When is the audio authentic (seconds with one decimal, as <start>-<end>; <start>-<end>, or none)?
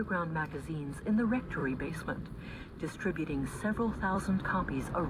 0.0-1.6; 4.4-5.1